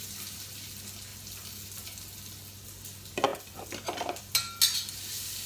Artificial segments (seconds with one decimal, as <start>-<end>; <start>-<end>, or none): none